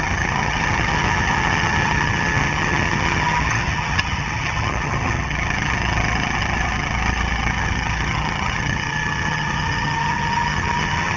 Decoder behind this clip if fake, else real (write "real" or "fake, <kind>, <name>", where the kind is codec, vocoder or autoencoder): fake, vocoder, HiFi-GAN